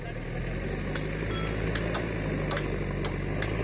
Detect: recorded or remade recorded